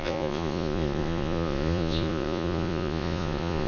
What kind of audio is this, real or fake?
fake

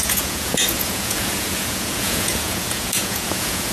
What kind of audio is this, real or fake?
fake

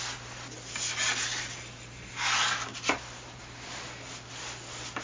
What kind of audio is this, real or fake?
real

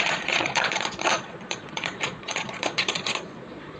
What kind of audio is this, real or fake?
fake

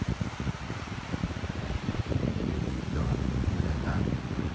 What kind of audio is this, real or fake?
fake